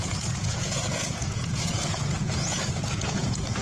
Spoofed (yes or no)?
yes